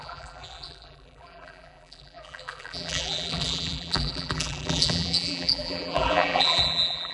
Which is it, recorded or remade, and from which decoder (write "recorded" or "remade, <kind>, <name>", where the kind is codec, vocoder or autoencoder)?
remade, vocoder, BigVGAN v2